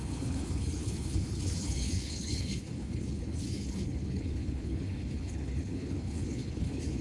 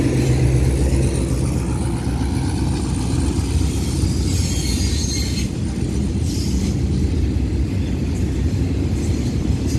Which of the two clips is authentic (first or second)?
second